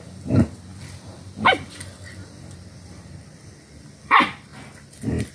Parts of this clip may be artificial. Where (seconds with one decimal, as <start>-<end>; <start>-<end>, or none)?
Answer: 0.0-4.5